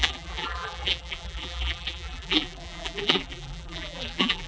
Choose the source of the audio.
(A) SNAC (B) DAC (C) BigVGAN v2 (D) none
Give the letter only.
C